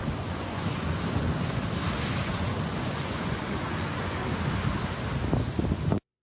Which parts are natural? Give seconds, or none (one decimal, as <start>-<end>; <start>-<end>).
1.6-2.2; 4.2-5.8